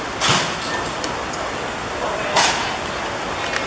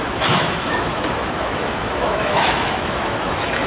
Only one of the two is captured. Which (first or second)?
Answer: first